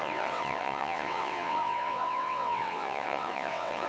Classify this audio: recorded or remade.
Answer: remade